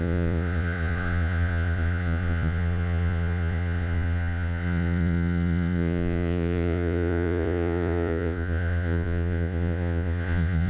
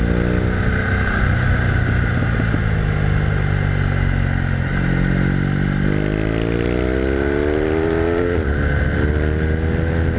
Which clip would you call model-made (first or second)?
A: first